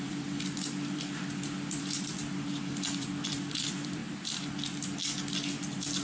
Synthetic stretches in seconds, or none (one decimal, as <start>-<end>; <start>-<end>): 0.0-2.1; 2.7-4.0; 5.5-6.0